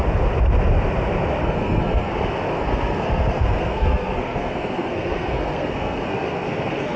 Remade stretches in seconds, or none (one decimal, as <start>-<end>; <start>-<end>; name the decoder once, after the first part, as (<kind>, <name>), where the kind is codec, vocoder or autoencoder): 1.4-2.1 (codec, SNAC); 2.5-7.0